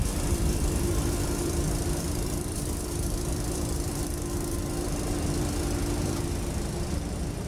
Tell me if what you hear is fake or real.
fake